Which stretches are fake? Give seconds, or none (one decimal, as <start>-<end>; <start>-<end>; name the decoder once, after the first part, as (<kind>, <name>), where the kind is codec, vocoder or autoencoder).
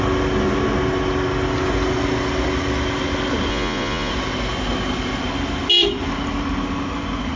3.5-4.1 (vocoder, Vocos)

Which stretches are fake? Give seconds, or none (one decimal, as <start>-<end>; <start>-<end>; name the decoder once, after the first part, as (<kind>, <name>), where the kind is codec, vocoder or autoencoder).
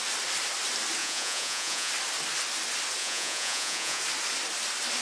1.0-1.9 (vocoder, Vocos); 3.0-4.0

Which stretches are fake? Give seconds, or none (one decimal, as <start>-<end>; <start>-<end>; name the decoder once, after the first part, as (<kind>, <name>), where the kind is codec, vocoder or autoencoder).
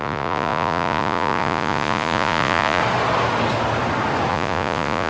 0.0-2.8 (vocoder, Vocos); 4.3-5.1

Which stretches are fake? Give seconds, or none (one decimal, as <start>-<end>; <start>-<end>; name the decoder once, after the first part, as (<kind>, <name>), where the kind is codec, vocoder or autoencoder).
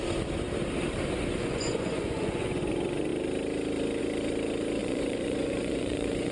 1.4-2.7 (vocoder, Vocos); 4.8-6.3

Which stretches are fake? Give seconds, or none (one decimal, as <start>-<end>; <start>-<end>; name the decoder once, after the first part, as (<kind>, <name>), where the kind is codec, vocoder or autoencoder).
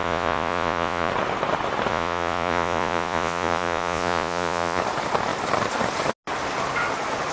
0.0-1.1 (vocoder, Vocos); 1.9-4.8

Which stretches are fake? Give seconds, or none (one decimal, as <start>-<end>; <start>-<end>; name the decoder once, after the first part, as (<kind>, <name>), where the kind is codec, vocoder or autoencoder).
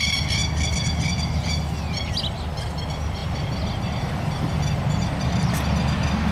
none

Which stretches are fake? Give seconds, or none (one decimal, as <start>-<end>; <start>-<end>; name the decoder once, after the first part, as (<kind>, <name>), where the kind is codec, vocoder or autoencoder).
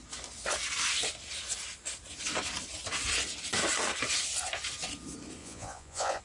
5.4-6.2 (vocoder, Vocos)